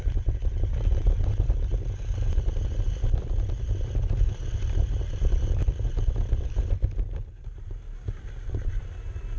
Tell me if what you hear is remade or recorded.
recorded